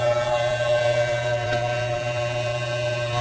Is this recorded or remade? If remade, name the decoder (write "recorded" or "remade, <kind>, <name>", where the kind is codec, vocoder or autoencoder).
remade, vocoder, BigVGAN v2